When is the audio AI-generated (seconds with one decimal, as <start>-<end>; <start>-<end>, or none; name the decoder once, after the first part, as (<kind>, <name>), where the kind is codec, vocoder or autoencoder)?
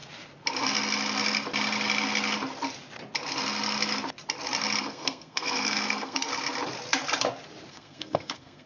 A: 4.8-6.3 (codec, SNAC); 7.7-8.7